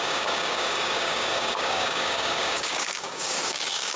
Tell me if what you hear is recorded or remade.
remade